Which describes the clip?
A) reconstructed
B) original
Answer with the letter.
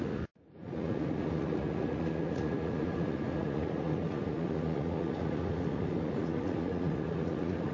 A